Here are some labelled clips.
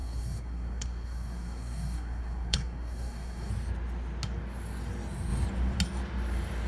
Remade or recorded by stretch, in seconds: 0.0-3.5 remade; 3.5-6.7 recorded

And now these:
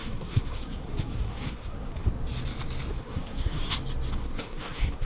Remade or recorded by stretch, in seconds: 0.0-2.1 remade; 2.1-2.9 recorded; 2.9-3.7 remade; 3.7-4.2 recorded; 4.2-5.1 remade

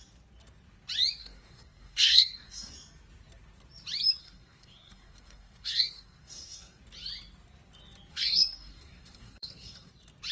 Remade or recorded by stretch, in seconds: 0.0-1.2 recorded; 1.2-2.7 remade; 2.7-4.2 recorded; 4.2-6.8 remade; 6.8-8.1 recorded; 8.1-9.9 remade; 9.9-10.3 recorded

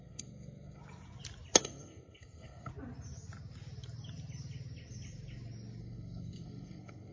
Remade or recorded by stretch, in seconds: 0.0-0.8 remade; 0.8-1.6 recorded; 1.6-2.7 remade; 2.7-5.8 recorded; 5.8-7.1 remade